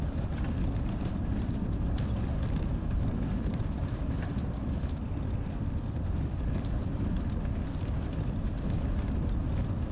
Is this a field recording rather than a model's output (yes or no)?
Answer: yes